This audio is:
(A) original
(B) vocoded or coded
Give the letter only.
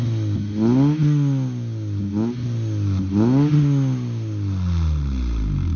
A